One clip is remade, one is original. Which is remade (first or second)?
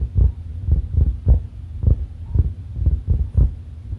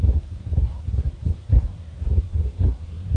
second